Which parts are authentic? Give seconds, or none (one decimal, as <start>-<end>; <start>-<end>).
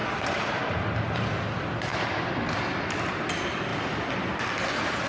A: 0.6-1.9; 2.6-5.1